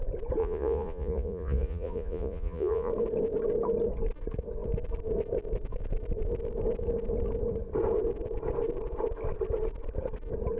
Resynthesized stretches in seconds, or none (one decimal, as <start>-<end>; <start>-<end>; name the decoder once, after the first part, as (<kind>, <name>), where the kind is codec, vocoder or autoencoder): 0.4-2.9 (vocoder, Vocos)